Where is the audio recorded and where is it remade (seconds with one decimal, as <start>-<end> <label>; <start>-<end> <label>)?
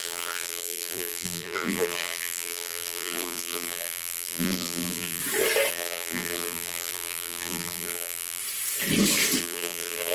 0.0-5.2 remade; 5.2-5.7 recorded; 5.7-8.4 remade; 8.4-9.4 recorded; 9.4-10.1 remade